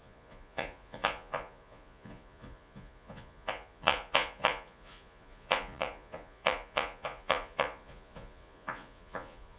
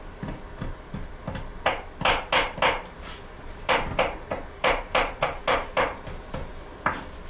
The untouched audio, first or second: second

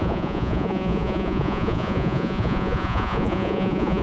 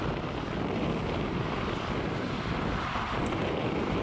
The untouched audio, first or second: second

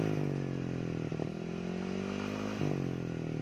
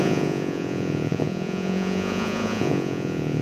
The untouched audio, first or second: first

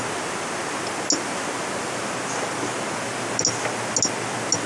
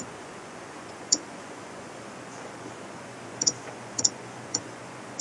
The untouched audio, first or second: first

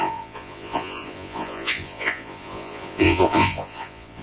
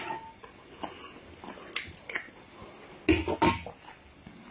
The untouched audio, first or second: second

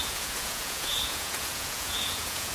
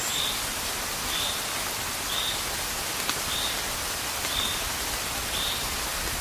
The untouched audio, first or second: second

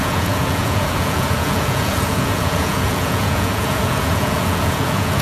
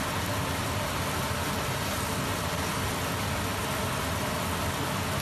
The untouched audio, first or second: second